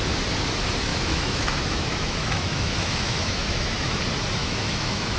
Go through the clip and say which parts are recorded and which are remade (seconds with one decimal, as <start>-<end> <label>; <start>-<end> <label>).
0.0-0.9 recorded; 0.9-4.0 remade; 4.0-4.4 recorded; 4.4-5.2 remade